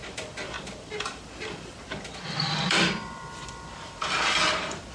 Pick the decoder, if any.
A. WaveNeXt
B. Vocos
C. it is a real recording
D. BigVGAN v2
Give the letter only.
D